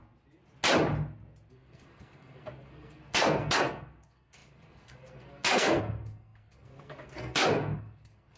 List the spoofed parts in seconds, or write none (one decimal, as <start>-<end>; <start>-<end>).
1.5-8.4